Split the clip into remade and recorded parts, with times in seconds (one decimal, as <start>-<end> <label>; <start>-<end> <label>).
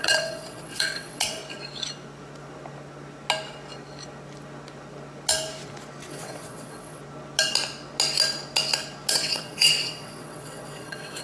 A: 0.0-1.4 remade; 1.4-6.1 recorded; 6.1-7.0 remade; 7.0-9.1 recorded; 9.1-11.2 remade